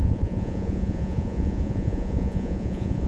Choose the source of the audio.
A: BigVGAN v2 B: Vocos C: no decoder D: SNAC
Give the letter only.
B